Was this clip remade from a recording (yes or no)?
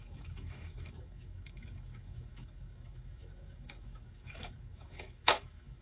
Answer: yes